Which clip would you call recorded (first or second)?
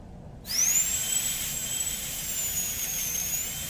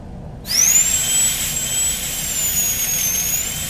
second